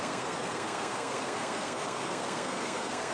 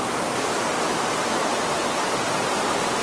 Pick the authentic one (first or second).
second